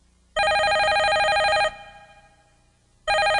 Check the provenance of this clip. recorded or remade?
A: recorded